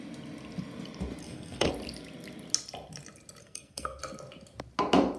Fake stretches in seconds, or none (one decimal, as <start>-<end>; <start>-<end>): 1.2-1.7; 3.4-4.0